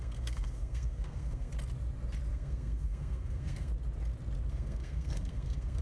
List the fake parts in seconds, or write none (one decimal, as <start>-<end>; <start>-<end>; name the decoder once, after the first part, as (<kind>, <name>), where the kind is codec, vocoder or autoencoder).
0.0-1.5 (codec, SNAC); 2.3-3.7; 4.5-5.8